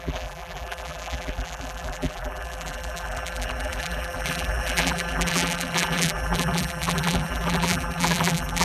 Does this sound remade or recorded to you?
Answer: remade